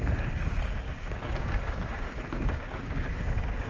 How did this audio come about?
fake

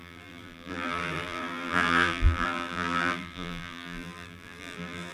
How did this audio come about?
fake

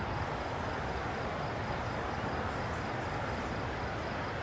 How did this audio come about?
real